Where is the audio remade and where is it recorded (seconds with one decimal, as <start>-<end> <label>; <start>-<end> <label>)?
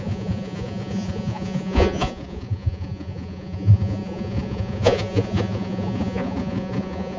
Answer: 0.0-7.2 remade